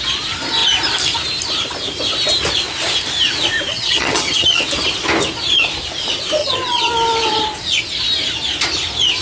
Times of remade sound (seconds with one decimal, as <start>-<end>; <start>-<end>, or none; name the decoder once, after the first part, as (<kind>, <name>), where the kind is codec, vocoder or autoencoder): 3.7-4.6 (vocoder, HiFi-GAN); 6.4-6.9